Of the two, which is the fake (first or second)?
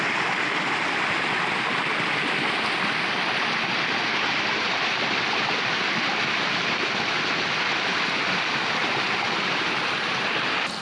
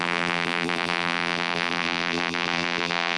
second